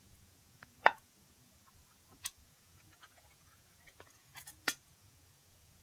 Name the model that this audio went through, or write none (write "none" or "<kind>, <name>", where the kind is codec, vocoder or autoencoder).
vocoder, Vocos